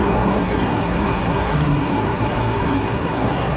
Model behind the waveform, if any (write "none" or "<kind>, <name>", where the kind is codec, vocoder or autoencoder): codec, SNAC